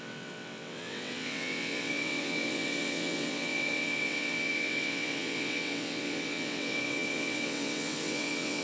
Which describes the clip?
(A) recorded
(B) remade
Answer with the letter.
B